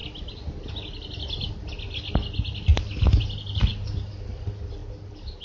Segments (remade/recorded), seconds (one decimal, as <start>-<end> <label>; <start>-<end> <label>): 0.0-5.4 recorded